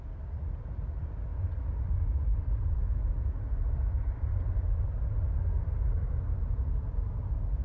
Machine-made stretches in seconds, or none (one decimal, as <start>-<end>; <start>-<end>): 3.0-6.2